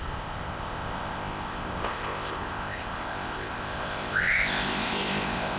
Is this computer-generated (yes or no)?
yes